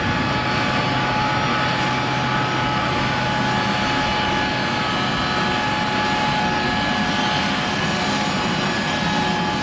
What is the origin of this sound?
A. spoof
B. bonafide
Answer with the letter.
B